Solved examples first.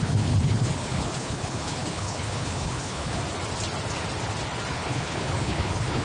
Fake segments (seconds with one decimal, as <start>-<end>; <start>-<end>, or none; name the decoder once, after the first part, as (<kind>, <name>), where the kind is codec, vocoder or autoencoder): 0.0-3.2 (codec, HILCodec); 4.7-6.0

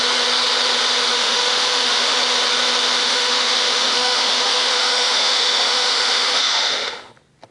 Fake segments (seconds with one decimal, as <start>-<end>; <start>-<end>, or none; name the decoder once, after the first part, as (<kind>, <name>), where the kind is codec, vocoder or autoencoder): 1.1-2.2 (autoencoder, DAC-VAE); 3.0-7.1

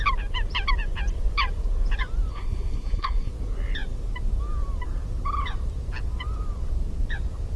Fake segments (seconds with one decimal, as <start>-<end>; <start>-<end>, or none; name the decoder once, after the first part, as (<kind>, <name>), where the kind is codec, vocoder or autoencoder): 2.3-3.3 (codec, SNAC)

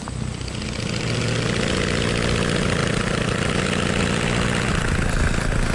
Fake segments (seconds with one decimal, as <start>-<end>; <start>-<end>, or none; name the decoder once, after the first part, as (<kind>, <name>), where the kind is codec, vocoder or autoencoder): none